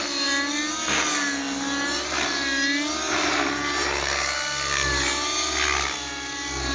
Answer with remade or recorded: recorded